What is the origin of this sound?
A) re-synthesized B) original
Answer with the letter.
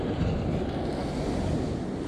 B